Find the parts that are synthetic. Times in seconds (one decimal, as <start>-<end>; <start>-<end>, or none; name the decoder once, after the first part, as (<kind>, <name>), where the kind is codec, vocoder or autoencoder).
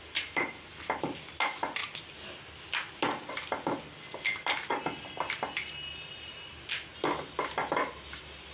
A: none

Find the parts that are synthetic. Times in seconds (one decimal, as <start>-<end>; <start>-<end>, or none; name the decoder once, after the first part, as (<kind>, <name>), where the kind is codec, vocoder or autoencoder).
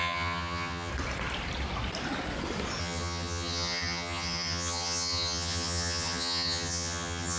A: 0.0-0.9 (vocoder, HiFi-GAN); 2.8-7.4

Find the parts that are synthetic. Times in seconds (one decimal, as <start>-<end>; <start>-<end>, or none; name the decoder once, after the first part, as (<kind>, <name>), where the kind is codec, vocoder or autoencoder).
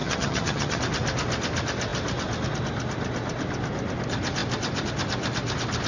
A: 0.0-0.8 (vocoder, HiFi-GAN)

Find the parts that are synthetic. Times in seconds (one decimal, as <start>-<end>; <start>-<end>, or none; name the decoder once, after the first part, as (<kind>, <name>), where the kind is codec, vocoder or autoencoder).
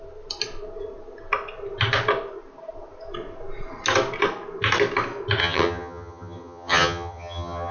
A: 5.4-7.7 (vocoder, HiFi-GAN)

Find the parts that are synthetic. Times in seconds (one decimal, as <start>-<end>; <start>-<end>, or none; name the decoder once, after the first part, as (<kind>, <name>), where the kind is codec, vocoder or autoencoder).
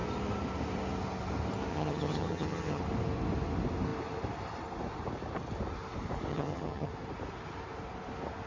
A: 1.7-2.8 (vocoder, HiFi-GAN); 6.3-6.9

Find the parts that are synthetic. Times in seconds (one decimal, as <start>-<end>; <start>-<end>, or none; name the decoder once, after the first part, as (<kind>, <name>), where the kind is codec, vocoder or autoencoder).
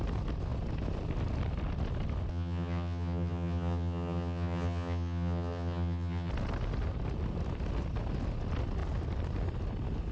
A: 2.3-6.3 (vocoder, HiFi-GAN)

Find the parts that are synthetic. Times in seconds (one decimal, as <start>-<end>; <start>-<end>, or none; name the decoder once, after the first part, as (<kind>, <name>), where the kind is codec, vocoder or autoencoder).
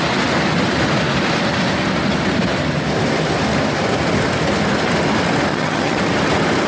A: 5.5-6.0 (vocoder, HiFi-GAN)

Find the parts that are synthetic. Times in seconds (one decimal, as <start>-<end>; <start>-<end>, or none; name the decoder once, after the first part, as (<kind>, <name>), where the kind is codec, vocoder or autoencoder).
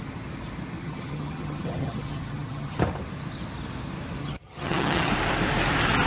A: 0.8-2.8 (vocoder, HiFi-GAN); 4.2-5.1